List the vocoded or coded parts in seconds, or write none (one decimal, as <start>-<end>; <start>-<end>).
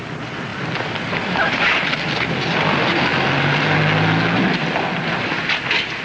0.5-1.6; 4.6-5.4